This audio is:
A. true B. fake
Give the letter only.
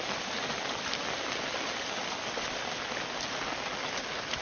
A